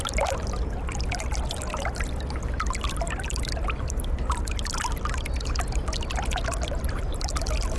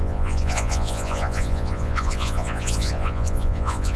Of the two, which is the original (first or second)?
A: first